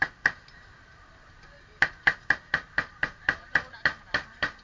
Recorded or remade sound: recorded